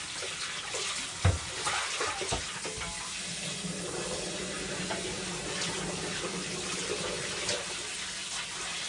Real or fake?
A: real